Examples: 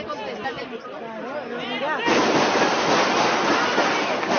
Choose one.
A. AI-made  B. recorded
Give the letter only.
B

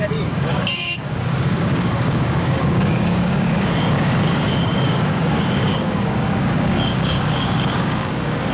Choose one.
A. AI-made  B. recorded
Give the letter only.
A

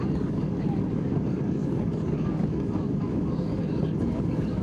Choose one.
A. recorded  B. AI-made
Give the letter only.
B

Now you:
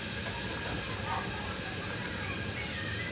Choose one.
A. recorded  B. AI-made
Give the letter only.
A